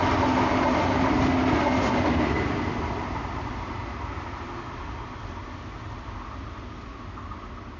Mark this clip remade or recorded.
recorded